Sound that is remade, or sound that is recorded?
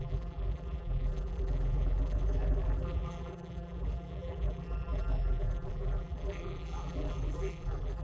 remade